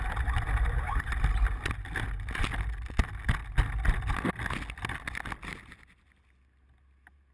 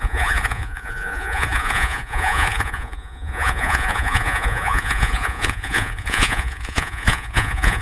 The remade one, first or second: second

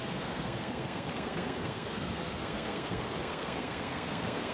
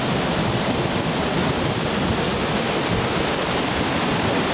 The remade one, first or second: first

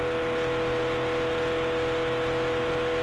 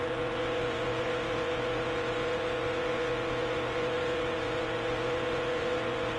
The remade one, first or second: second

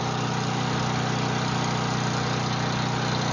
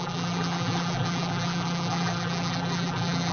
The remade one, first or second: second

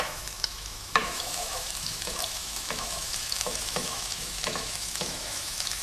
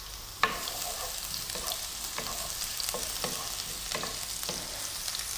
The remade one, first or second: first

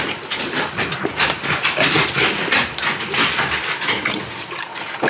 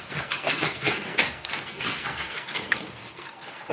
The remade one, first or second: second